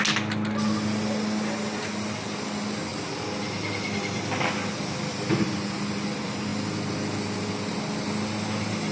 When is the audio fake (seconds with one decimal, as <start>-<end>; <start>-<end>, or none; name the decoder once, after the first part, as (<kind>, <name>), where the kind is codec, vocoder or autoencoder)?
none